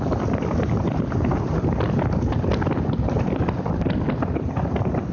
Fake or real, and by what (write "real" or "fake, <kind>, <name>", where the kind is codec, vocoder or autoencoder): real